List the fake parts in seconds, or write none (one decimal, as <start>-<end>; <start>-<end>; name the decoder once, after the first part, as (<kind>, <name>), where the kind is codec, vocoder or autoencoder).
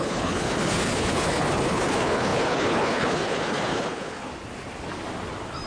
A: 0.0-4.3 (codec, HILCodec)